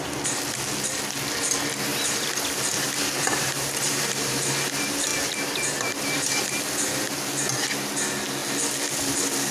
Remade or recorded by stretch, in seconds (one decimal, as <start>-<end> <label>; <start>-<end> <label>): 0.0-1.9 recorded; 1.9-4.5 remade; 4.5-9.5 recorded